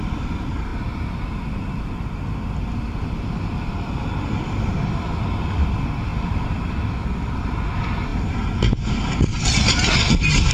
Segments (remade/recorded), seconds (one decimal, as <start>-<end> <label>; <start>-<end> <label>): 0.0-10.5 recorded

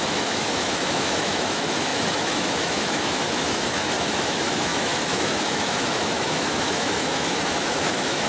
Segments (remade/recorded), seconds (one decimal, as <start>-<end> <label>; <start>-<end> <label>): 0.0-8.3 remade

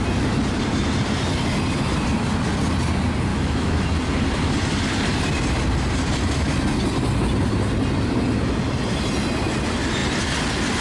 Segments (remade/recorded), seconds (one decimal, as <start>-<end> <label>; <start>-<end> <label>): 0.0-3.3 recorded; 3.3-3.9 remade; 3.9-10.8 recorded

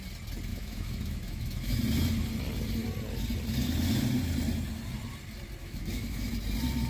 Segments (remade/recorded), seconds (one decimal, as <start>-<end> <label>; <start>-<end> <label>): 0.0-0.5 recorded; 0.5-1.8 remade; 1.8-5.6 recorded; 5.6-6.3 remade; 6.3-6.9 recorded

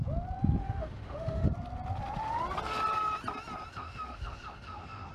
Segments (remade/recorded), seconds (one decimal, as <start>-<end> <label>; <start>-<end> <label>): 0.0-0.6 recorded; 0.6-1.5 remade; 1.5-3.7 recorded; 3.7-5.1 remade

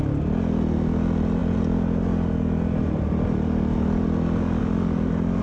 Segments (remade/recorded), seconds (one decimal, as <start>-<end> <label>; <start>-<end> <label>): 0.0-5.4 recorded

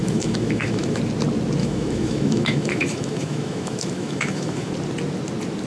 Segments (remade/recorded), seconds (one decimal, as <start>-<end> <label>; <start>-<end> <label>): 0.0-1.0 remade; 1.0-1.6 recorded; 1.6-4.7 remade; 4.7-5.7 recorded